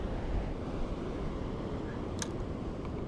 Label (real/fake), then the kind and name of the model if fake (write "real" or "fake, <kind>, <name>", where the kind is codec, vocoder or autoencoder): real